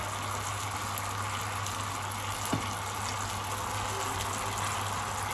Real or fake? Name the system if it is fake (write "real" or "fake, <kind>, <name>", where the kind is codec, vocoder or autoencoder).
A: real